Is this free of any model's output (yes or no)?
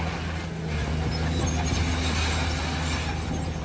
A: yes